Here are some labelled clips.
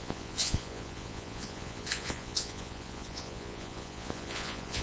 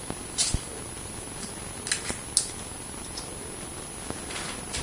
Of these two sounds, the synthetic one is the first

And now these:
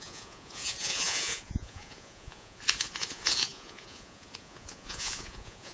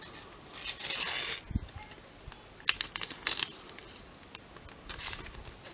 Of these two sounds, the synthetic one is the first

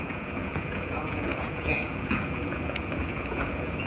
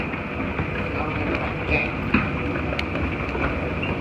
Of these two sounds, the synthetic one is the first